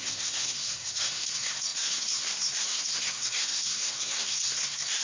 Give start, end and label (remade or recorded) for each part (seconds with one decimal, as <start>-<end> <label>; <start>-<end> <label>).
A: 0.0-5.0 remade